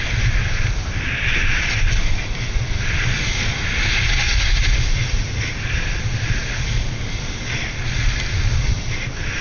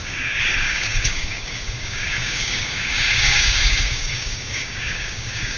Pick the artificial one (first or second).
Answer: second